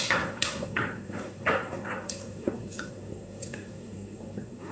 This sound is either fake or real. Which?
fake